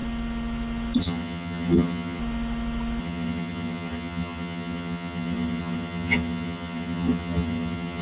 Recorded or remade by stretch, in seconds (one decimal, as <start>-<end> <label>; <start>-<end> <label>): 0.0-1.0 recorded; 1.0-2.2 remade; 2.2-3.0 recorded; 3.0-8.0 remade